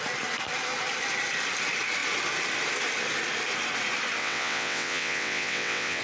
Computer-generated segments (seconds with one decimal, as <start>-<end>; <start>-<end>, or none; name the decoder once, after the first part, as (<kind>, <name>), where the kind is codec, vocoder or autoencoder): 4.2-6.0 (vocoder, WaveNeXt)